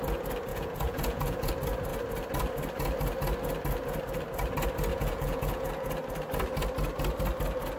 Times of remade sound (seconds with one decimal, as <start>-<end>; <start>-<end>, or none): 0.5-1.5; 4.9-5.7

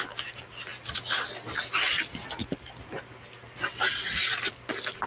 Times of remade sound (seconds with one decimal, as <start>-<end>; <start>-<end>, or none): none

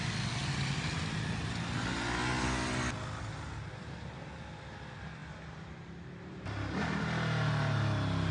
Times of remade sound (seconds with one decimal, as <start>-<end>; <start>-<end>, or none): none

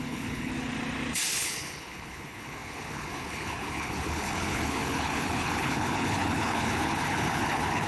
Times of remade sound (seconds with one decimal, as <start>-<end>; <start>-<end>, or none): 0.0-0.5; 1.3-7.9